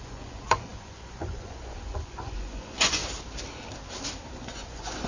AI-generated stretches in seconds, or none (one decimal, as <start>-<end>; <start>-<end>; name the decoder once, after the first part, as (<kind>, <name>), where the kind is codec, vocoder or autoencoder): 0.0-3.0 (vocoder, Vocos); 4.3-5.1